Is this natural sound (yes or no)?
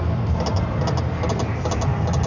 yes